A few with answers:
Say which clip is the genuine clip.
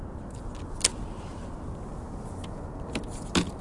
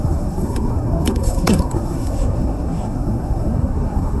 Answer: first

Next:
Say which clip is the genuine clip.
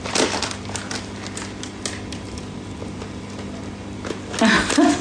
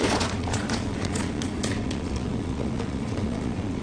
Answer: first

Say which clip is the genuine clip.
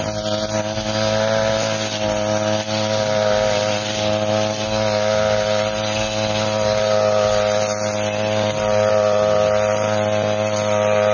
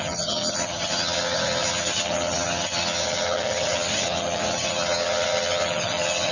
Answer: first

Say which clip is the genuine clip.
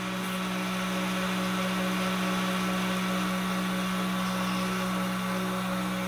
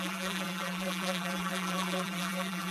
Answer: first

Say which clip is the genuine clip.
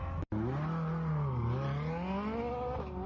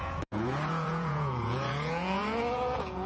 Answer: first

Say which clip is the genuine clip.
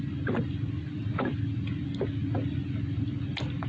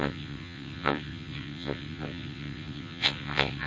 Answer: first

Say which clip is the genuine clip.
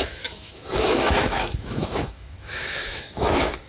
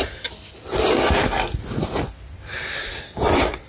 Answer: second